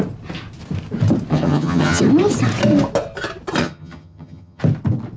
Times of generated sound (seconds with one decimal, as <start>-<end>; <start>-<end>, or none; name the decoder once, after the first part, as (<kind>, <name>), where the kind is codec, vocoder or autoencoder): 1.3-2.0 (vocoder, HiFi-GAN); 3.6-4.6